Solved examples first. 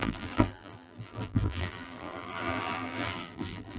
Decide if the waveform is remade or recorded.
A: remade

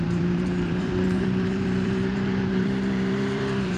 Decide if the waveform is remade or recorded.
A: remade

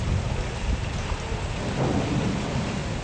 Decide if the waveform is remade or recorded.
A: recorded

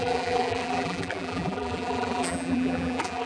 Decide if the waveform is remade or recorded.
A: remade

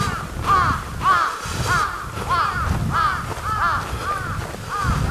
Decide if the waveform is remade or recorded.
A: recorded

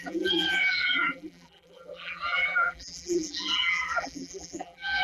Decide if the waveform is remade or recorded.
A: remade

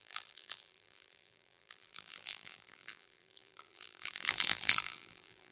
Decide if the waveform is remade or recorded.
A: remade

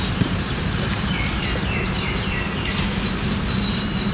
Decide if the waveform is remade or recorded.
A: remade